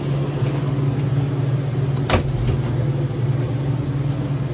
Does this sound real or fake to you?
real